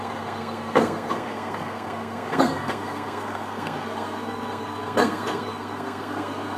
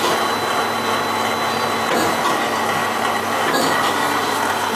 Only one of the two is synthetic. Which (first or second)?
first